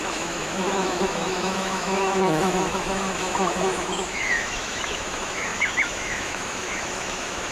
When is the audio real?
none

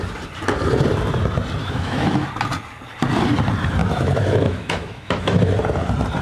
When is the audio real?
0.0-1.6; 2.3-3.8; 5.5-6.2

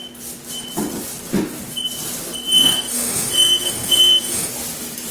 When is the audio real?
0.0-2.6; 4.5-5.1

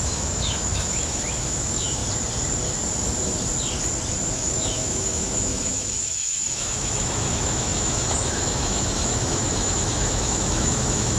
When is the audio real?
2.0-4.3